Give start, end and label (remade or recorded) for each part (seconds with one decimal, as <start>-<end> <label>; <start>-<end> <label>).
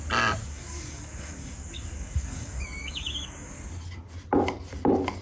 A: 0.0-0.4 recorded; 0.4-3.5 remade; 3.5-5.2 recorded